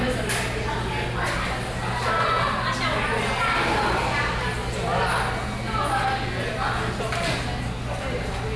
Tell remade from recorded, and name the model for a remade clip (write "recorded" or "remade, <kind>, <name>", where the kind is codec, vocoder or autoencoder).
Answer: recorded